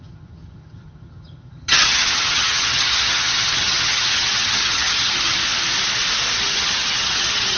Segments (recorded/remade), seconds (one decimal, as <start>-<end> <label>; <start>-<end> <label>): 0.0-5.4 remade; 5.4-6.4 recorded; 6.4-7.6 remade